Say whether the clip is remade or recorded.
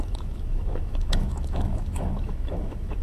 remade